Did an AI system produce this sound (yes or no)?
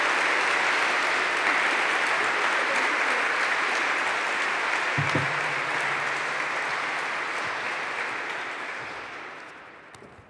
no